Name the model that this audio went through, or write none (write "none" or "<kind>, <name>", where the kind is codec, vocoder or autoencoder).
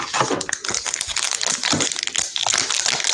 none